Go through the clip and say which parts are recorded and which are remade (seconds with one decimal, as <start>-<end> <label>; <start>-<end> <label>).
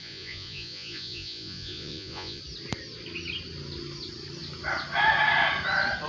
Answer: 0.0-2.4 remade; 2.4-6.1 recorded